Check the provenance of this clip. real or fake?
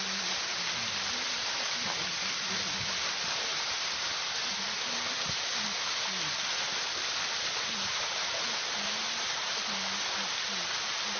real